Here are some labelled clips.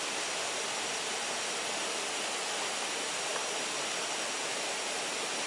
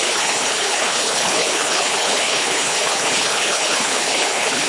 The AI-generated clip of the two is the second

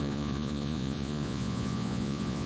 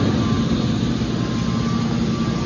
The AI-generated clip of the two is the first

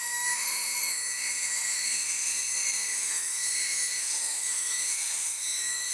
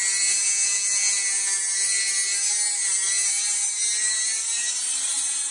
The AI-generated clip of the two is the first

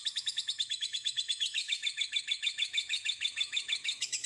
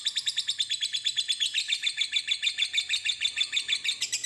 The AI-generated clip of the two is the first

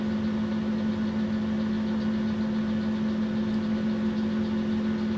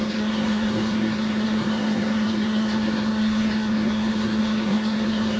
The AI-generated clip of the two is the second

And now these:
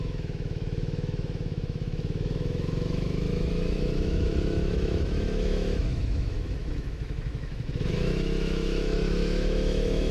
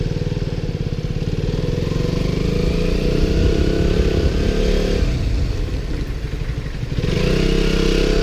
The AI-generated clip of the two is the first